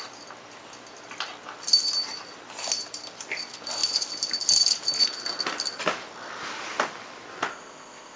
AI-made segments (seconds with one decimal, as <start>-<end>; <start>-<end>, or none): 7.5-8.2